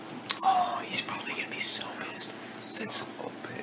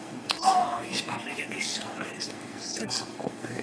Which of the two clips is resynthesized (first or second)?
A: second